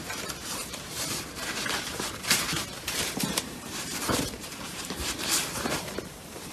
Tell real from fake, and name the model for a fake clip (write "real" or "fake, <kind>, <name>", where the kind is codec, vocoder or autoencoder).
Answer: fake, vocoder, BigVGAN v2